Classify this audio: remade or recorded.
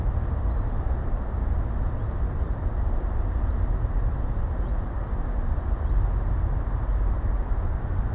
recorded